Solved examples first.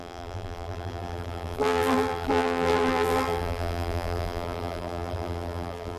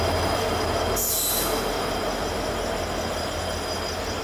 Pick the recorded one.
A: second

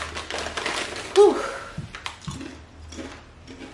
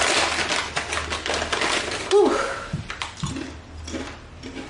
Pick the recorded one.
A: first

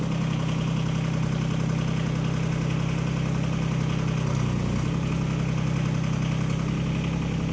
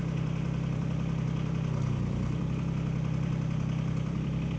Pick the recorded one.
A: first